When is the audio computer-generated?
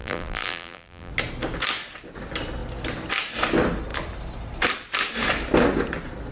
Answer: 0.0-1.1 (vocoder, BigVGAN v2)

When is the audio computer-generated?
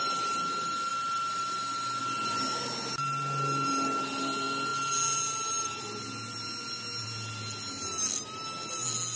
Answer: none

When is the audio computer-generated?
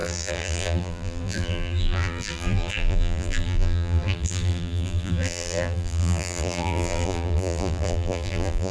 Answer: 0.0-8.7 (vocoder, BigVGAN v2)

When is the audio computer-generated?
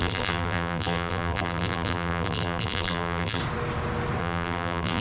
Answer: 0.0-3.4 (vocoder, BigVGAN v2); 4.2-5.0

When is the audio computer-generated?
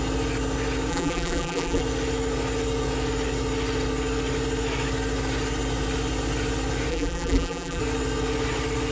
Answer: 0.9-1.8 (vocoder, BigVGAN v2); 6.9-7.8